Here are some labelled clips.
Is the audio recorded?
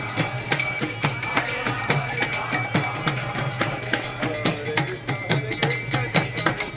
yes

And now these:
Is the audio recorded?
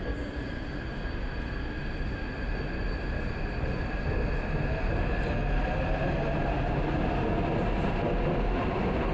yes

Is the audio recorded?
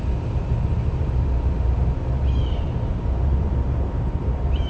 no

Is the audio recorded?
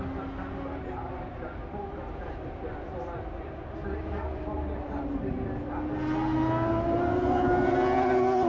yes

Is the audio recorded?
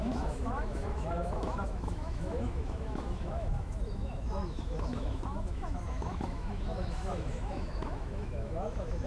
no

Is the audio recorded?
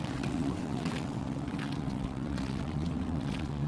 no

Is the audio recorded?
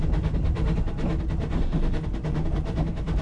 yes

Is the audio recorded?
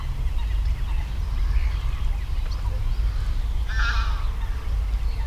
yes